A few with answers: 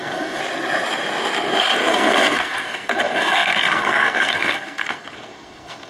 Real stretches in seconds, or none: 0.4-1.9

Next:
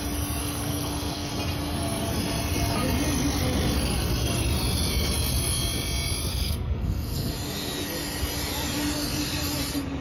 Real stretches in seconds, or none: 0.0-0.4; 1.3-6.3; 7.3-10.0

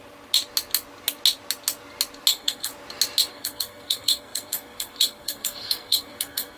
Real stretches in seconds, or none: 0.0-2.3; 2.7-3.3

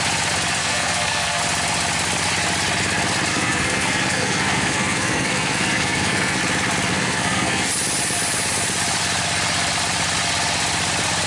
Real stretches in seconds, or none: 0.0-0.6; 1.4-3.3; 6.4-6.9; 7.7-11.3

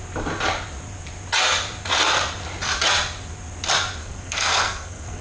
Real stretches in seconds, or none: 0.0-4.0

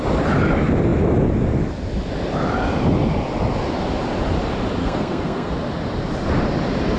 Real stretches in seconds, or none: 0.0-4.8; 5.5-7.0

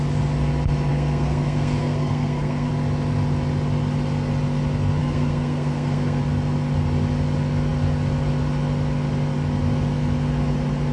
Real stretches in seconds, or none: 0.0-0.9; 2.7-5.0; 6.2-10.9